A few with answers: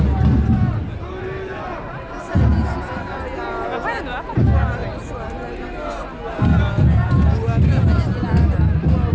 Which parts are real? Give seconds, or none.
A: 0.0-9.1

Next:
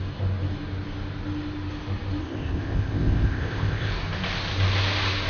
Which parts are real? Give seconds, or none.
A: 0.0-2.2; 3.9-5.3

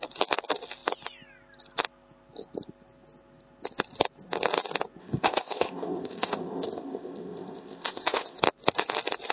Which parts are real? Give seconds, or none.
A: 0.0-5.0; 8.4-9.3

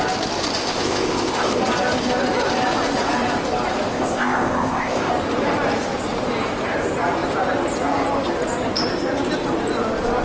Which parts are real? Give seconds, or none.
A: 0.0-0.6; 1.6-3.9; 5.1-10.2

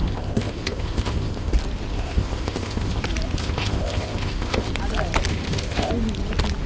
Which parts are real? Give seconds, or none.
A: 1.5-1.9; 3.0-3.4; 4.7-5.3; 5.9-6.7